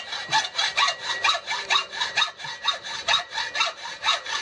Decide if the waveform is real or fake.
fake